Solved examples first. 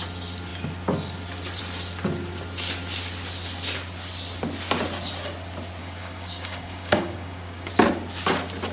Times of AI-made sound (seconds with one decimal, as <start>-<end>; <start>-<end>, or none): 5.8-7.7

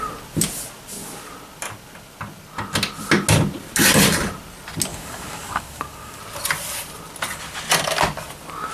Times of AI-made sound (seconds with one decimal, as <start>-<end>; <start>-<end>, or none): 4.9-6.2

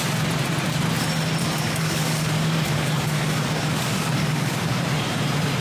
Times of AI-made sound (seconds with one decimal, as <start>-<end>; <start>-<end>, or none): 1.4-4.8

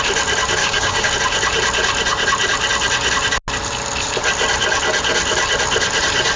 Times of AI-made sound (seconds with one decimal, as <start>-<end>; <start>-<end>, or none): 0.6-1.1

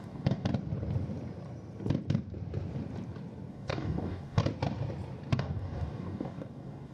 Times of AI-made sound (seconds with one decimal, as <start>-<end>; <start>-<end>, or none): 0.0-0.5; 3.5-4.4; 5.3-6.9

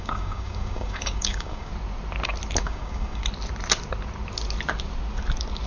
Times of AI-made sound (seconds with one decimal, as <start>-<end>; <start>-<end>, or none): 0.0-1.7; 2.6-3.2

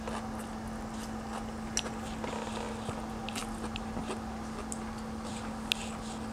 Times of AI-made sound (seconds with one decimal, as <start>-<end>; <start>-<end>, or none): none

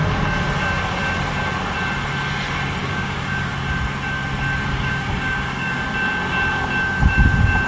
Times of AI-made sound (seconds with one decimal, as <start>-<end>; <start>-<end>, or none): 2.8-3.5; 4.7-5.8